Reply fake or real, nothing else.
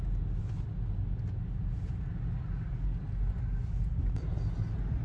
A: real